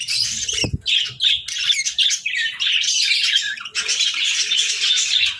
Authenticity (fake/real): real